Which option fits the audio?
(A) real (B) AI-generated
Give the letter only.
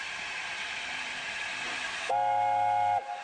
A